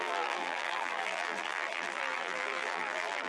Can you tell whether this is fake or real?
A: fake